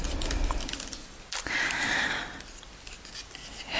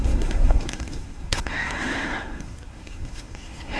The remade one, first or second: second